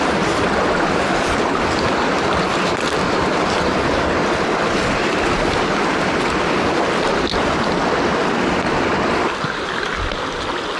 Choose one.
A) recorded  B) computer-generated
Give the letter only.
A